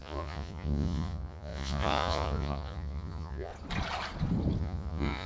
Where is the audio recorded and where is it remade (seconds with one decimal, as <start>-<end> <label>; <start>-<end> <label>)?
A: 0.0-3.5 remade; 3.5-4.6 recorded; 4.6-5.3 remade